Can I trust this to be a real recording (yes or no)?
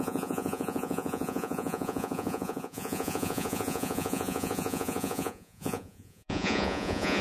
no